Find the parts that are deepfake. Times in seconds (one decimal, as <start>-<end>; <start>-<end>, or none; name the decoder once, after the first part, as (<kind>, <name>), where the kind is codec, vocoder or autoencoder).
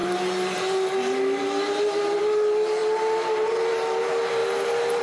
none